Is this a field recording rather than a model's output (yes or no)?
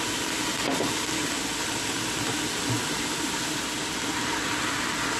yes